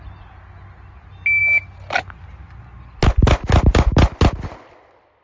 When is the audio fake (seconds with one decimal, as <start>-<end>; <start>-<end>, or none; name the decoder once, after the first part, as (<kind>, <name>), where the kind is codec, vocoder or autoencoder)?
none